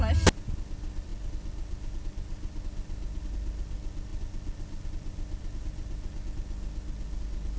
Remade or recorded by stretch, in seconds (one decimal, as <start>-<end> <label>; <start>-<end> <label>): 0.0-7.6 recorded